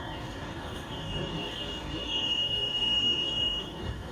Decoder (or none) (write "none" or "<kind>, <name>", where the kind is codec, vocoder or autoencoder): codec, DAC